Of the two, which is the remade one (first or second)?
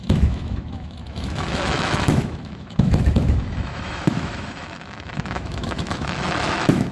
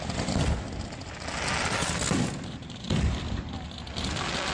first